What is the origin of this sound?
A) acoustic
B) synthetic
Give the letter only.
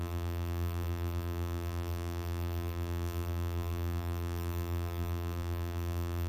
B